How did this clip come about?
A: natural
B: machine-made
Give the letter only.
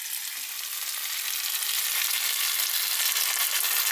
A